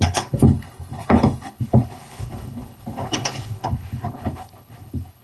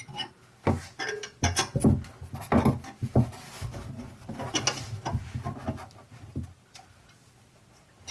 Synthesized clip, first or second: first